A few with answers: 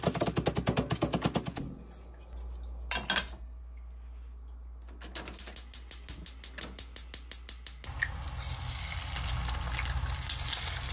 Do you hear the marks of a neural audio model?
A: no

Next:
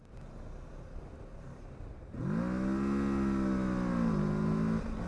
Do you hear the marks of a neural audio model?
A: no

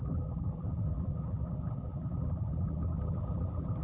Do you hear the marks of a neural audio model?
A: yes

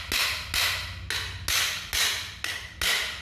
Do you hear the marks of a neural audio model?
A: no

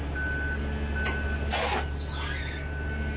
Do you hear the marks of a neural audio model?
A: no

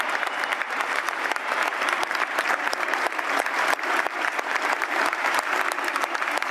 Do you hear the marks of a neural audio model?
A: yes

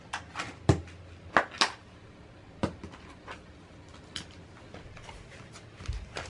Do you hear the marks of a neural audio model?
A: no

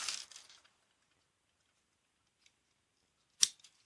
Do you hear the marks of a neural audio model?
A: no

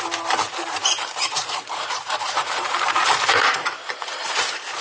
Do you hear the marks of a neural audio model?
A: yes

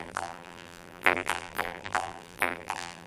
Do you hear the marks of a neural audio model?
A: yes